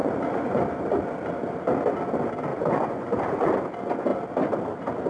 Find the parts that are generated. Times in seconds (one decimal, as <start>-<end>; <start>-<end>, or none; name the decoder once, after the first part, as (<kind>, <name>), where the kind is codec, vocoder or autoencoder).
0.0-0.6 (vocoder, Vocos); 2.5-3.6